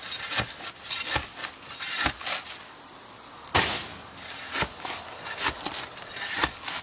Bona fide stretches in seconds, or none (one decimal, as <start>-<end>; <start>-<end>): 0.0-6.8